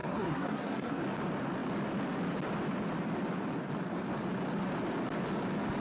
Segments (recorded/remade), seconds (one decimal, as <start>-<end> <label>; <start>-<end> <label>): 0.0-1.0 remade; 1.0-5.8 recorded

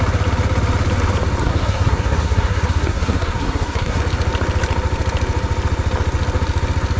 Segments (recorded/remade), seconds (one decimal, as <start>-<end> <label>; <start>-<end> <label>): 0.0-1.4 recorded; 1.4-4.0 remade; 4.0-7.0 recorded

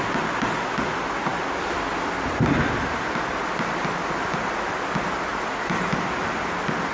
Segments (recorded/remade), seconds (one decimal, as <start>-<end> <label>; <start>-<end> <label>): 0.0-6.9 recorded

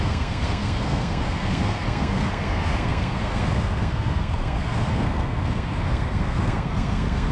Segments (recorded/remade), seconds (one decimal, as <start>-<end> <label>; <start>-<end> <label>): 0.0-7.3 remade

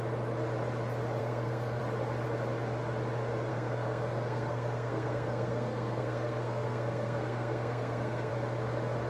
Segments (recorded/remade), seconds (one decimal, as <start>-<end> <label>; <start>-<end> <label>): 0.0-1.2 recorded; 1.2-1.8 remade; 1.8-3.5 recorded; 3.5-8.3 remade; 8.3-9.1 recorded

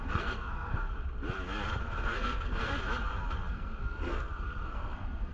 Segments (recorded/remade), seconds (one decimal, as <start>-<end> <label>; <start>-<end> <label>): 0.0-0.8 remade; 0.8-1.8 recorded; 1.8-2.7 remade; 2.7-3.5 recorded; 3.5-5.3 remade

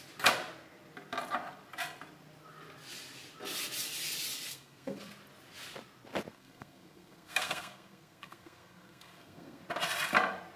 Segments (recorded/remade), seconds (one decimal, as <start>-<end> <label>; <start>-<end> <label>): 0.0-4.5 recorded; 4.5-5.1 remade; 5.1-6.3 recorded; 6.3-9.6 remade; 9.6-10.6 recorded